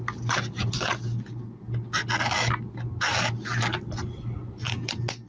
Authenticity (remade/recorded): recorded